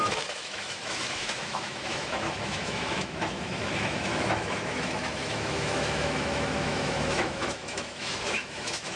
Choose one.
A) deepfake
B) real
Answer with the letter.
A